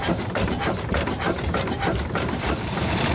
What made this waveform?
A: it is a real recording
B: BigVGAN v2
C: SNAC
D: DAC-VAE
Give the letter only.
B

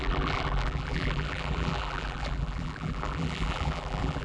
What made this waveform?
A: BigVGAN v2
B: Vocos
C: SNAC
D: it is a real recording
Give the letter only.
A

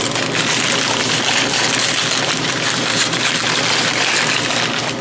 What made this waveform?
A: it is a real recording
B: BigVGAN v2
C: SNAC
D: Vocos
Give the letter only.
B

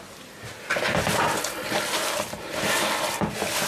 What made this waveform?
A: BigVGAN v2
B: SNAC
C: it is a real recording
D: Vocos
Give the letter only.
A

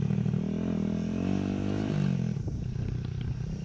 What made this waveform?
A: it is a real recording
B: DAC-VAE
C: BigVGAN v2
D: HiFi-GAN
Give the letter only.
A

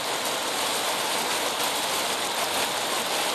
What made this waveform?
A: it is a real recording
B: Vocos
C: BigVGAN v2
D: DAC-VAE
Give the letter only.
A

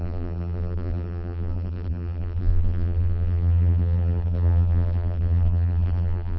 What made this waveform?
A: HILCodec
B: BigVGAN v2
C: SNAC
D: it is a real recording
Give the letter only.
B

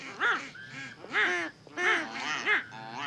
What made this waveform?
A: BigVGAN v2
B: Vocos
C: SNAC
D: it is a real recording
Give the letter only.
D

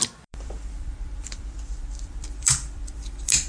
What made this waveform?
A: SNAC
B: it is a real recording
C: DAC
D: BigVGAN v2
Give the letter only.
D